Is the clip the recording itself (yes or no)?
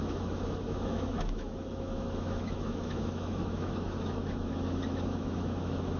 no